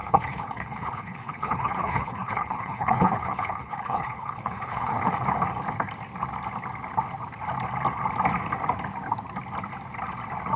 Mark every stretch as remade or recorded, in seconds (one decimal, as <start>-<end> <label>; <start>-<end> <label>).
0.0-5.1 remade; 5.1-10.6 recorded